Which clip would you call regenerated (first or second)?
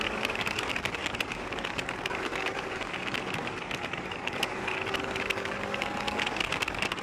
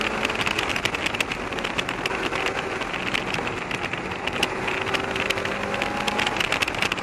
first